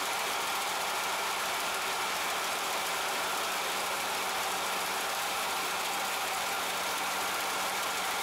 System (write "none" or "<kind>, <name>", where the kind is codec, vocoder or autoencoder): vocoder, BigVGAN v2